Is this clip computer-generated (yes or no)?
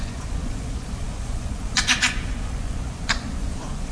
yes